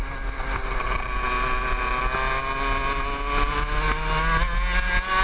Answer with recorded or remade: recorded